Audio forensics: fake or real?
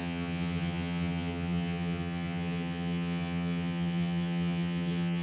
fake